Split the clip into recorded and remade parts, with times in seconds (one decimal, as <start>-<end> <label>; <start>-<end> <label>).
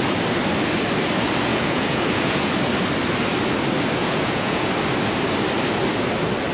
0.0-1.5 recorded; 1.5-2.5 remade; 2.5-4.0 recorded; 4.0-4.7 remade; 4.7-6.5 recorded